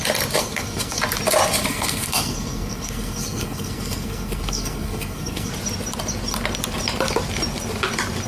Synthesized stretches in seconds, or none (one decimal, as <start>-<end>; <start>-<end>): 0.4-1.0; 1.7-5.5